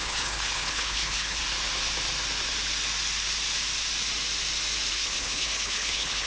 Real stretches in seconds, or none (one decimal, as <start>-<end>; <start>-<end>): 1.4-4.9